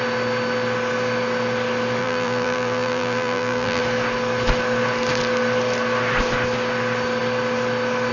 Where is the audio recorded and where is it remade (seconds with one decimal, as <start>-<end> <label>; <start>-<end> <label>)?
0.0-2.0 recorded; 2.0-3.8 remade; 3.8-8.1 recorded